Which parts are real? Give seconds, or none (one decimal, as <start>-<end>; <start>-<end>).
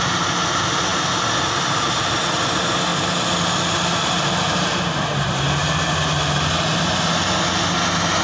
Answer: 0.0-8.2